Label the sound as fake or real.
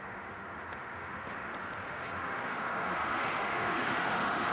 fake